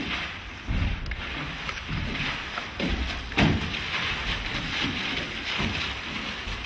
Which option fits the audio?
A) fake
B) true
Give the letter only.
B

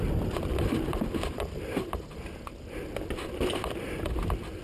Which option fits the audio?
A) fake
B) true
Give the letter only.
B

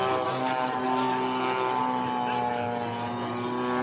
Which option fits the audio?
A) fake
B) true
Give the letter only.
B